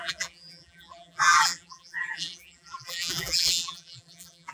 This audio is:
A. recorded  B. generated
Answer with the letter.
B